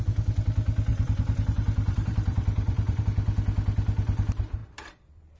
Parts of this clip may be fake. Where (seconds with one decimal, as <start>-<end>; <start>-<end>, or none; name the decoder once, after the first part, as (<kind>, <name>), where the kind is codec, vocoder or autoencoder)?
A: 0.9-3.0 (vocoder, BigVGAN v2); 4.6-5.4

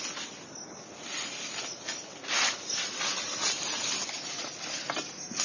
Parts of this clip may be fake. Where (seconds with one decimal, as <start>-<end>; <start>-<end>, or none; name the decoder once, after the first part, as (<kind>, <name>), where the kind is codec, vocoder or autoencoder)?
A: none